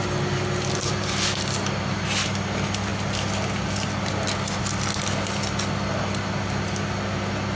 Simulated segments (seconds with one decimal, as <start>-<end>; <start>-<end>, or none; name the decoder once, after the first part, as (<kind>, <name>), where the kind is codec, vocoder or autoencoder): none